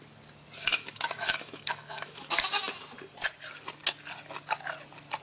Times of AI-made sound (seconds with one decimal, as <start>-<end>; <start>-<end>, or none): 0.7-2.6